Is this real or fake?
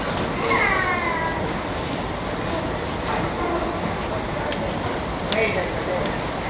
real